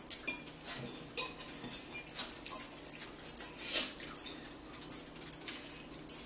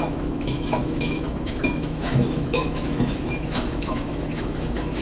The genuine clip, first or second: first